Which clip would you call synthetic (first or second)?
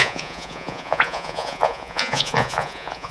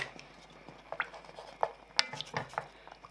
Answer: first